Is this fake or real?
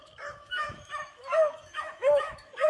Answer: fake